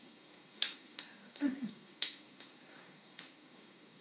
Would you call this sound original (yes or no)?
no